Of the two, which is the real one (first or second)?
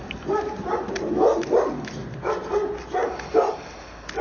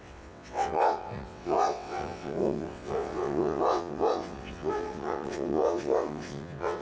first